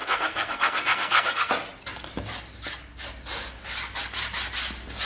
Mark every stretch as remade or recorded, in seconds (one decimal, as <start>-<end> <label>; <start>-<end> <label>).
0.0-1.5 remade; 1.5-5.1 recorded